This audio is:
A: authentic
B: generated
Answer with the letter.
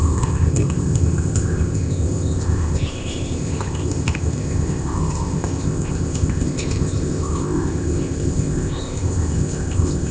B